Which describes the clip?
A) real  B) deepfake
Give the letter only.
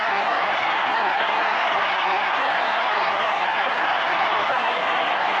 B